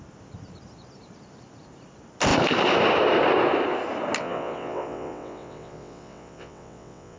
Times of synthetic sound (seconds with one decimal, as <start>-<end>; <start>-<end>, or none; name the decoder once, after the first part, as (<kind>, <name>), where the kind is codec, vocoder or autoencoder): 4.2-7.2 (vocoder, WaveNeXt)

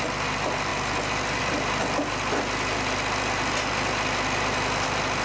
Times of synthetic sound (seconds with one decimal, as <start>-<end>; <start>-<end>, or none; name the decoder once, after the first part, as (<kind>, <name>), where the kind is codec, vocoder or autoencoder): none

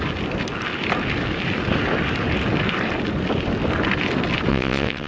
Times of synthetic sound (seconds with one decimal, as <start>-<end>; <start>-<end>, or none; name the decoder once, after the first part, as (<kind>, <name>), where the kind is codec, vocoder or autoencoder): 4.5-5.1 (vocoder, WaveNeXt)

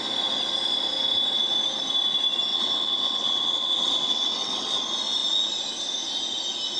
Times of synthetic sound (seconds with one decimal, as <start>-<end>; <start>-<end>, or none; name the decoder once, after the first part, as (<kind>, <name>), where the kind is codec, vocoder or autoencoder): 2.5-4.8 (vocoder, WaveNeXt)

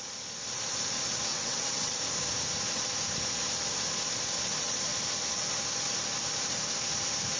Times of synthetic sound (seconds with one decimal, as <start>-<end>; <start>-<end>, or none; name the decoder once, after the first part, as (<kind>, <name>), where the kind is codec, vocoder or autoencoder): 1.3-2.0 (vocoder, WaveNeXt)

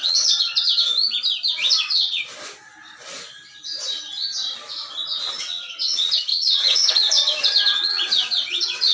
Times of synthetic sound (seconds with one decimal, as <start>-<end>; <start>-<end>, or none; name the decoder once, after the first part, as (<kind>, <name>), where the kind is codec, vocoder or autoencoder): 0.0-0.9 (vocoder, WaveNeXt); 1.5-2.2; 5.4-8.9

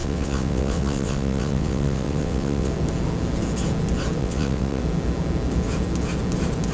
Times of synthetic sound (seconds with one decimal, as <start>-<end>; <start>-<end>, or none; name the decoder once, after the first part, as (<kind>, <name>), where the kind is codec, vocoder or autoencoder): 0.0-2.7 (vocoder, WaveNeXt); 4.2-4.8